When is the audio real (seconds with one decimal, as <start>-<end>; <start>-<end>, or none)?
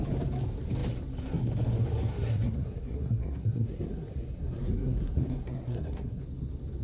0.0-2.1; 6.2-6.8